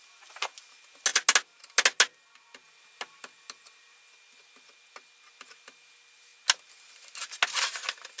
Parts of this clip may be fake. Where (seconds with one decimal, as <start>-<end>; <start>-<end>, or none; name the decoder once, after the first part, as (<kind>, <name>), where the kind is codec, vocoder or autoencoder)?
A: none